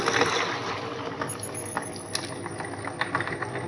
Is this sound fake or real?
real